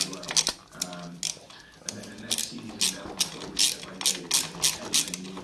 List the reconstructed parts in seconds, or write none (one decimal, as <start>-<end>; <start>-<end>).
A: none